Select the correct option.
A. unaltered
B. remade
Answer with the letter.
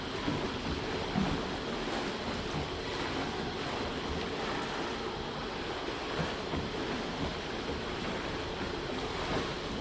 A